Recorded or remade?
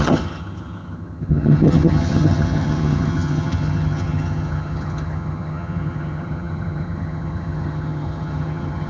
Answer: remade